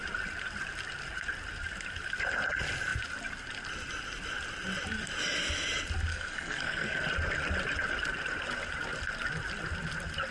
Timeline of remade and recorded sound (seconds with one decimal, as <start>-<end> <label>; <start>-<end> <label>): 0.0-6.1 recorded; 6.1-7.0 remade; 7.0-10.3 recorded